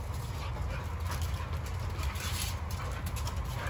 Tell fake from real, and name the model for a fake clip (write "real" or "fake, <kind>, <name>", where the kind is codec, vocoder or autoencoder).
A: real